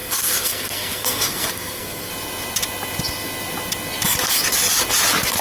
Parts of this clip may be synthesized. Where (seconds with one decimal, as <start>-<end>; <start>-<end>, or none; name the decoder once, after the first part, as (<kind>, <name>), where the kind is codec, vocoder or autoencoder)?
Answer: 0.0-2.1 (codec, SNAC)